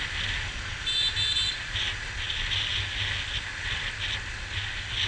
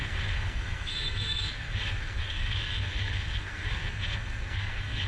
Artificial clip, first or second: second